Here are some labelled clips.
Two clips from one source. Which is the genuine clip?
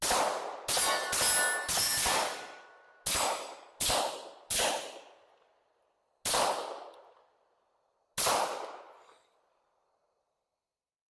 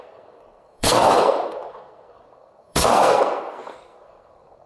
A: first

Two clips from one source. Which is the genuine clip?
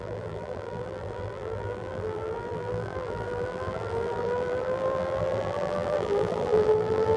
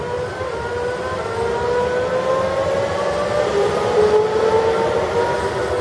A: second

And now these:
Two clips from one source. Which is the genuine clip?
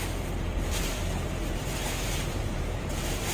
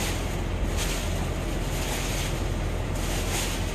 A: second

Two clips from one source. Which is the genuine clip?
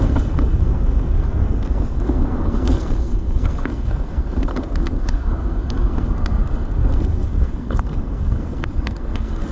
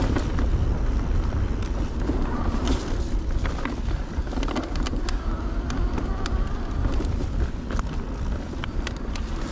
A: second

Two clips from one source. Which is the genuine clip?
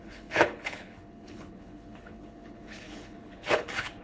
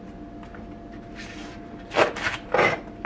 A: second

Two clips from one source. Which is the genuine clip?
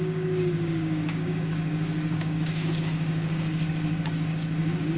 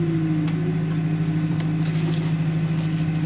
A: second